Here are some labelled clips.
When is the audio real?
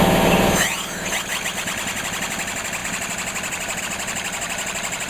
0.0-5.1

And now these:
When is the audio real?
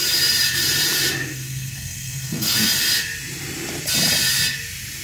0.0-1.3; 2.7-5.0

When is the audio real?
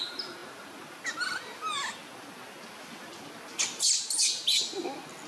0.0-5.3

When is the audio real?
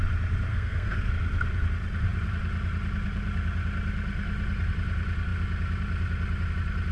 0.0-0.5; 1.1-6.9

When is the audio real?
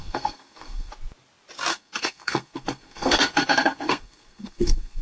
0.9-1.7